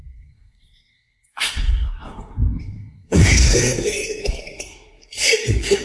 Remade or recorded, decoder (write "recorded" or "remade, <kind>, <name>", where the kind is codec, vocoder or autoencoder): remade, codec, SNAC